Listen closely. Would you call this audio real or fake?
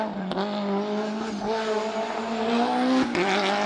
real